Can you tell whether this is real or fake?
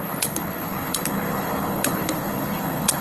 fake